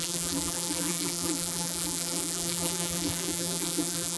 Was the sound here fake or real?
fake